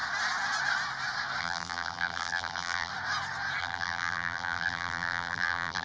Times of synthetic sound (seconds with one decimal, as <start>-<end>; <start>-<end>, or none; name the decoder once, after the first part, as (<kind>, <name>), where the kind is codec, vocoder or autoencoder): 1.4-2.9 (vocoder, BigVGAN v2); 3.6-5.8